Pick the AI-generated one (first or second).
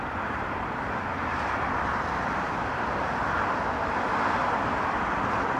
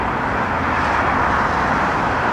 first